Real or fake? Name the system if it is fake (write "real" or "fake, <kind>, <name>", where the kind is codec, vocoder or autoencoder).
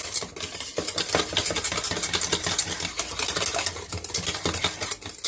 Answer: real